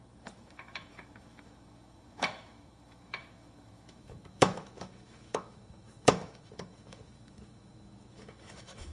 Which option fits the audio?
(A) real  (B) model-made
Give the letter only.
B